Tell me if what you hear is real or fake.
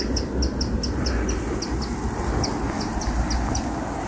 real